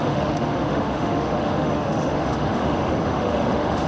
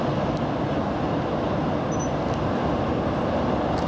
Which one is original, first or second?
second